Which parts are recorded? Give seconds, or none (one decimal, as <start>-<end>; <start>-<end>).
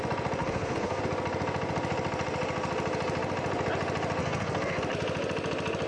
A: 0.0-0.4; 1.0-4.2; 4.8-5.9